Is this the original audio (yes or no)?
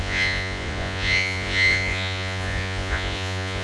no